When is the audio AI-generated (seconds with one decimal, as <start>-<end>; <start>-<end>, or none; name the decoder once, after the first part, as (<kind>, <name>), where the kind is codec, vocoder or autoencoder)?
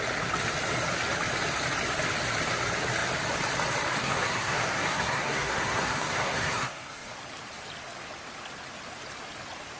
4.0-7.1 (codec, SNAC)